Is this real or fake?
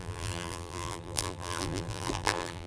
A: fake